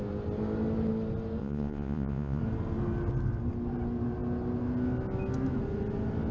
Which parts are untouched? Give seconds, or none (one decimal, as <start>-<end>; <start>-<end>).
0.0-1.4; 2.4-6.3